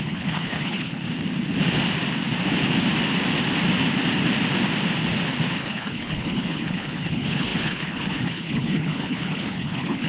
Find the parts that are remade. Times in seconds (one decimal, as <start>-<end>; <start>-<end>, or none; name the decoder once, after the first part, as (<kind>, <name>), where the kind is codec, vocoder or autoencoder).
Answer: 0.0-1.0 (codec, HILCodec); 5.6-10.1